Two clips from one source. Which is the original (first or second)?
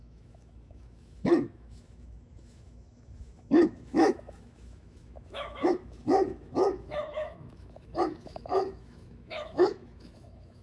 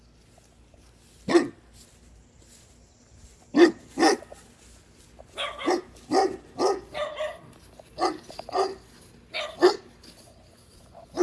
second